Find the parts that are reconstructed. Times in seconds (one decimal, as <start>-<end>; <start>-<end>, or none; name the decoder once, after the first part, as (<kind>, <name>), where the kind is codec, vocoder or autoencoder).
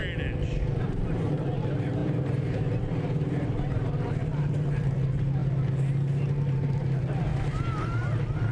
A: 0.6-5.4 (vocoder, BigVGAN v2); 6.3-8.5